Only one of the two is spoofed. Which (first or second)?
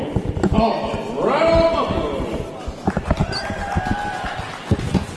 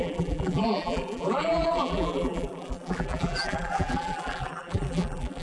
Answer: second